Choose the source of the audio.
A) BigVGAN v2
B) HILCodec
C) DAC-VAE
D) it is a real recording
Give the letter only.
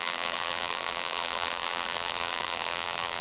A